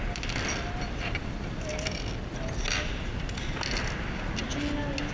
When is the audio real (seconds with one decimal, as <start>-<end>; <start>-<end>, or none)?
0.0-5.1